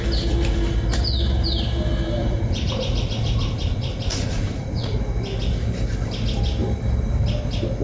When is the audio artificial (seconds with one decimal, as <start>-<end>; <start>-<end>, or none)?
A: 2.2-5.0